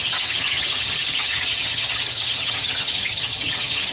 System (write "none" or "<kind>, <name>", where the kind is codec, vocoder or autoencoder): vocoder, HiFi-GAN